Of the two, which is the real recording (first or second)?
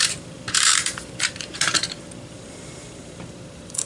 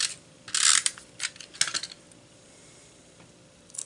second